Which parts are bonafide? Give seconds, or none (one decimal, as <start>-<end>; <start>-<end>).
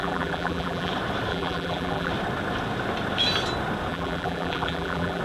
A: 0.9-1.3; 2.1-3.9